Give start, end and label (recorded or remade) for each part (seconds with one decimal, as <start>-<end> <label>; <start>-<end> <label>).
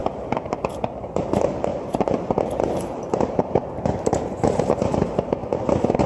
0.0-5.4 remade; 5.4-6.1 recorded